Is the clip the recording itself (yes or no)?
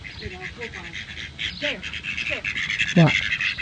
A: yes